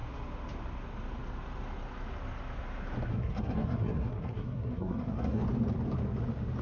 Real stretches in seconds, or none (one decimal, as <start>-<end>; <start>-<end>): 0.0-3.1; 5.4-6.6